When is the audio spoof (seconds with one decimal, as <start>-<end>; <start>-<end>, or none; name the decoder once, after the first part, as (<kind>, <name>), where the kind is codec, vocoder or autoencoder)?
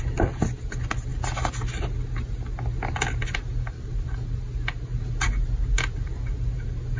none